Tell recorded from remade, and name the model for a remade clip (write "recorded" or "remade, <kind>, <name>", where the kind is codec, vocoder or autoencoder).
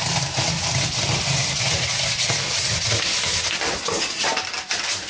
recorded